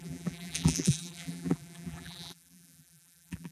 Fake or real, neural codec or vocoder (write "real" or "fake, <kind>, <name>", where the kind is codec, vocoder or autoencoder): fake, vocoder, BigVGAN v2